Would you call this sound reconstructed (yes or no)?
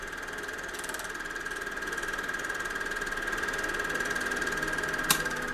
no